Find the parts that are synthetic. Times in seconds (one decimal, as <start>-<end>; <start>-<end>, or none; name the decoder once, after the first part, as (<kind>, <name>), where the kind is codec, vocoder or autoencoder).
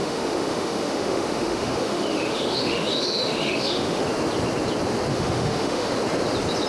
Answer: 0.0-4.0 (autoencoder, DAC-VAE); 5.1-5.9